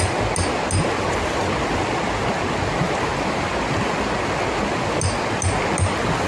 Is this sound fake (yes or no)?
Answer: no